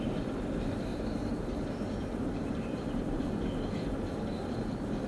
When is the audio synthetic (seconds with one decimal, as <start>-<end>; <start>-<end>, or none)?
0.9-1.6; 2.0-3.5